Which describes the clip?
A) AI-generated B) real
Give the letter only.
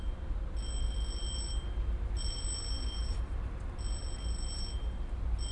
B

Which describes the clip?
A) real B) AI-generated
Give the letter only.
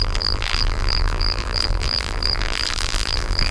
B